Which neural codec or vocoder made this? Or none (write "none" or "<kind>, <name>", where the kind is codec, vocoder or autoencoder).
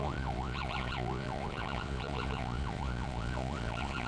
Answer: vocoder, Vocos